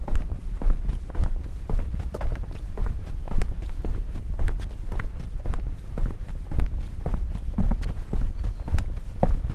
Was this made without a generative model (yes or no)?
yes